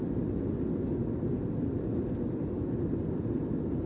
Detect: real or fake real